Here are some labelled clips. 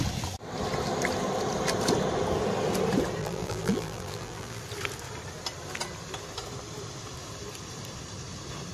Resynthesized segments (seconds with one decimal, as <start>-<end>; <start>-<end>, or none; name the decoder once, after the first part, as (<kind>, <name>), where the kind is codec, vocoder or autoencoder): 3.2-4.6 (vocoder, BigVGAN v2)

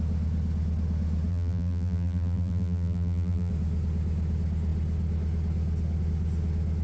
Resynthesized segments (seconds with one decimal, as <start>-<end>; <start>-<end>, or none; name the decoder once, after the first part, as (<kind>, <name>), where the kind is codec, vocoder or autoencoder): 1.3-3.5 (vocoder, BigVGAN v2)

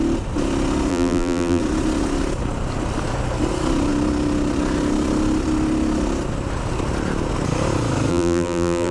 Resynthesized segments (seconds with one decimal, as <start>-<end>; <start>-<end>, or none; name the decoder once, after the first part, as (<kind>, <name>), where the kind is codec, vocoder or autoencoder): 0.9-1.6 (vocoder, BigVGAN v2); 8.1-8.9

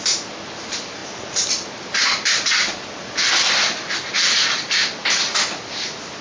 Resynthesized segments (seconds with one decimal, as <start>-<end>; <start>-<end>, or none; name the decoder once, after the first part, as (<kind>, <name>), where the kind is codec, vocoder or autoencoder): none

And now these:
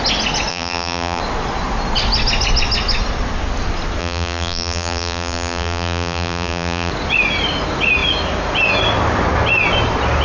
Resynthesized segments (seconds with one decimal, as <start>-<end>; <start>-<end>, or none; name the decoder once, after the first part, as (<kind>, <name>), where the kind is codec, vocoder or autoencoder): 0.5-1.2 (vocoder, BigVGAN v2); 4.0-6.9

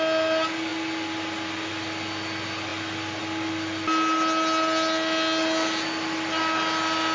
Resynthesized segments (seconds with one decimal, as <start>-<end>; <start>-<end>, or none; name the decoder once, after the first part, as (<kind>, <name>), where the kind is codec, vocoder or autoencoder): none

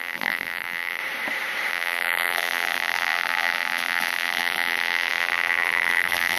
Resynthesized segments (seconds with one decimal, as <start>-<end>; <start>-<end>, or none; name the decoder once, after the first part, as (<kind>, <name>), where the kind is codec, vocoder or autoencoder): 0.0-1.0 (vocoder, BigVGAN v2); 1.7-6.4

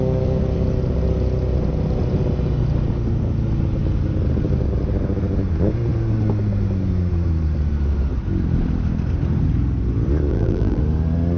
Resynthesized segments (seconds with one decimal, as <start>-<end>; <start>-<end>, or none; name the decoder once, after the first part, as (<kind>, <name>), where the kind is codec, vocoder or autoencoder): 10.3-10.8 (vocoder, BigVGAN v2)